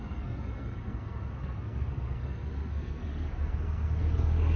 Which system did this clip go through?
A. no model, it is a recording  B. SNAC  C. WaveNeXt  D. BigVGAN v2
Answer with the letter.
B